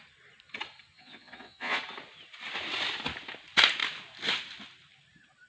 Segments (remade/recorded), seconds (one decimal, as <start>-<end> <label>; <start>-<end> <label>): 0.0-0.9 recorded; 0.9-1.8 remade; 1.8-5.5 recorded